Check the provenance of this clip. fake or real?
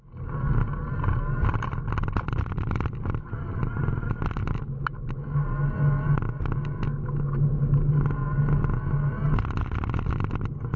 real